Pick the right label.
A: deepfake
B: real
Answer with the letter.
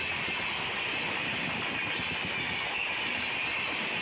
B